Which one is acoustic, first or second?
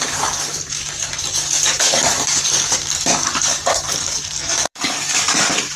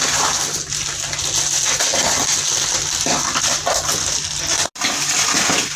second